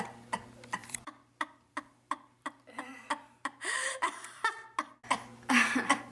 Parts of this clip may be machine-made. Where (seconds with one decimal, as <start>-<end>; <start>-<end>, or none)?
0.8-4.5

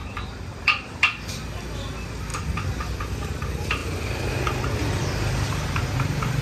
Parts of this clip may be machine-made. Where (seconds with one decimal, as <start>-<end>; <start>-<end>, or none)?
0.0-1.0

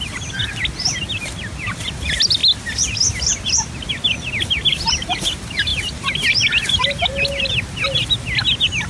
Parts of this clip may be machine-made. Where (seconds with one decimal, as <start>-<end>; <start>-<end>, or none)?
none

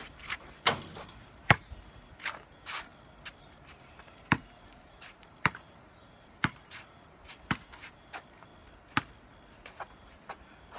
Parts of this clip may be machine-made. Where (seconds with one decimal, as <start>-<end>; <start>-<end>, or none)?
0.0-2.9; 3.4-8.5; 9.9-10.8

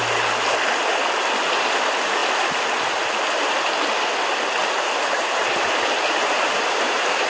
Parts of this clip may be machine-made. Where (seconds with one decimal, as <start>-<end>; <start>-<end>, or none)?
4.6-7.3

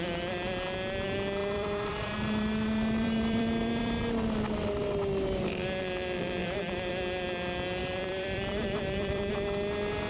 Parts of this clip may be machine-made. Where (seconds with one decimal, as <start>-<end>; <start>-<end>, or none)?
1.4-4.0; 6.4-6.9; 7.8-9.3

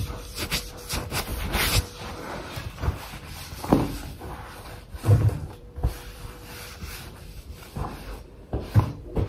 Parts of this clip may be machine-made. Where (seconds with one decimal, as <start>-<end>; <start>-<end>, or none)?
0.0-1.3; 2.1-9.3